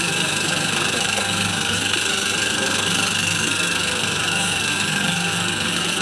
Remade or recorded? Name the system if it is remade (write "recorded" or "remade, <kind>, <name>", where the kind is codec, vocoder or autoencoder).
remade, codec, SNAC